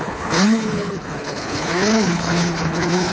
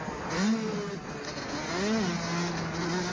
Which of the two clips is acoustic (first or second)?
second